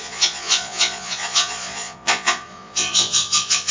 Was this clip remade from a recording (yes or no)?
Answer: yes